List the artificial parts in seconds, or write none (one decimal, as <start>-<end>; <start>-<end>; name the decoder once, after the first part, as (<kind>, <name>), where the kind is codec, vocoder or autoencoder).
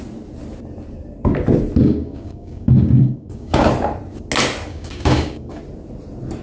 1.8-3.7 (codec, DAC); 4.7-5.6